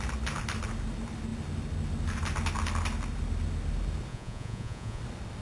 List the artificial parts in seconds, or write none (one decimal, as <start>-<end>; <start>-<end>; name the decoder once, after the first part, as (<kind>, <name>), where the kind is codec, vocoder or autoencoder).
4.1-5.0 (vocoder, Vocos)